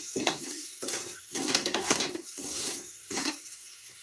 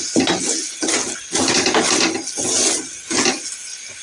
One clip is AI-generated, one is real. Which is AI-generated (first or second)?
first